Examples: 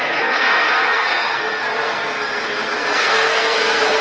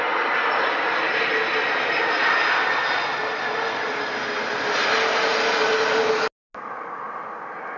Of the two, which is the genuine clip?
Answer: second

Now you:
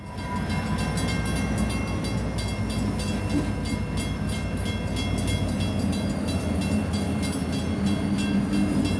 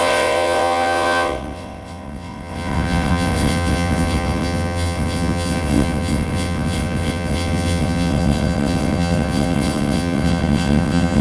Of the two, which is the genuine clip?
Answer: first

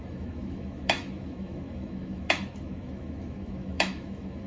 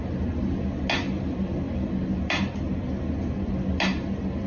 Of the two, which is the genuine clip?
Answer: second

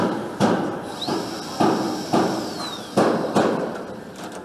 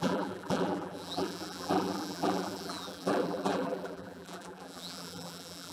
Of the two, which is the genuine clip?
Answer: first